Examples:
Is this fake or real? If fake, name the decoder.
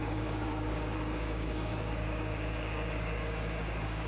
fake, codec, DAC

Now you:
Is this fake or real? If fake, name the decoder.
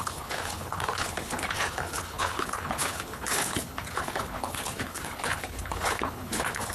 fake, codec, HILCodec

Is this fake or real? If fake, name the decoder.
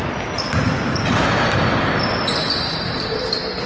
real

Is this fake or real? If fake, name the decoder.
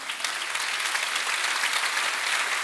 real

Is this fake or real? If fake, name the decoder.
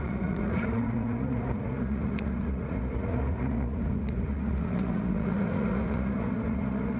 fake, vocoder, Vocos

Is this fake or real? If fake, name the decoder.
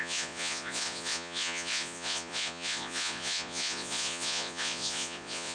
fake, vocoder, Vocos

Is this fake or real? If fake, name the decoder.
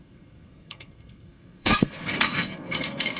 fake, codec, SNAC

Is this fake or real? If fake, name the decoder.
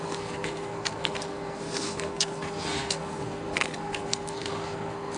fake, codec, SNAC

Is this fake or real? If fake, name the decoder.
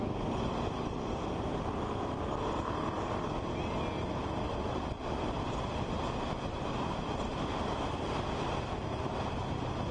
real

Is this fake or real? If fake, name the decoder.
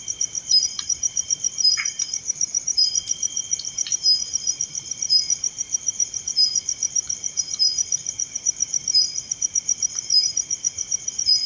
fake, vocoder, BigVGAN v2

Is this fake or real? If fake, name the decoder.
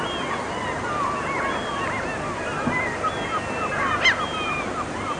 real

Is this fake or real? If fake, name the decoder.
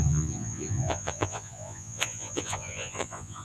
fake, vocoder, Vocos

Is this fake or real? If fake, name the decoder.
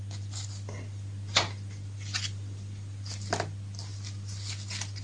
real